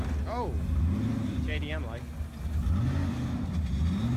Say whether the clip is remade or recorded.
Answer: recorded